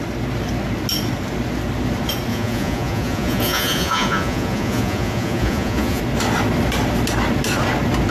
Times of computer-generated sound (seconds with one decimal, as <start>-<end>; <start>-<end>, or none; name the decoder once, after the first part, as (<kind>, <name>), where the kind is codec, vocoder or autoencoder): 2.3-6.0 (vocoder, Vocos)